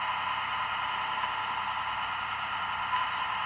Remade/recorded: remade